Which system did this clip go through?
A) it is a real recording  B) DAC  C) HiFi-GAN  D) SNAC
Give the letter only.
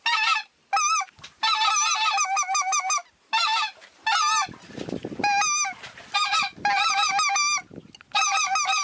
A